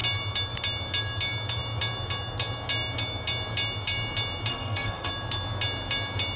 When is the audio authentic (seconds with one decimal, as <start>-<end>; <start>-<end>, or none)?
0.0-4.5; 5.1-6.4